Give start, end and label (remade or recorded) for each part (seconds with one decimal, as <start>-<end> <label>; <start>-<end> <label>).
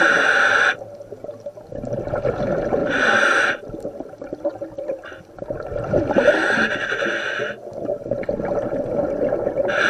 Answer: 0.0-9.9 recorded